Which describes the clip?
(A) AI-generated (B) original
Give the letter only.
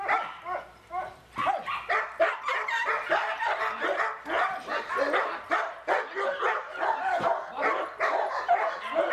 A